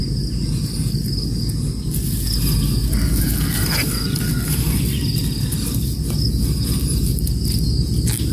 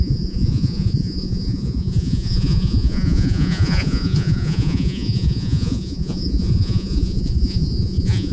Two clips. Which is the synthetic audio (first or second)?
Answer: second